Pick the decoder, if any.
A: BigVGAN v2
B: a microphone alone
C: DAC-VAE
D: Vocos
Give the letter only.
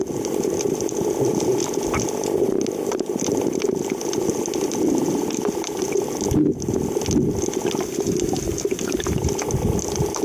B